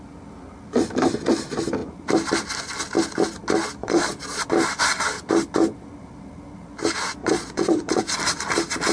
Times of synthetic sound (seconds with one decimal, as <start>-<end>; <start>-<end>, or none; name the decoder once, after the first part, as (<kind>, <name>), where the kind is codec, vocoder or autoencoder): 3.8-4.4 (vocoder, Vocos); 7.2-8.0